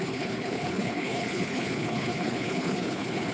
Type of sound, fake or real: fake